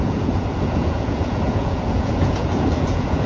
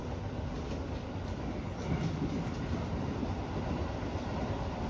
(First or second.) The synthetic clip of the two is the first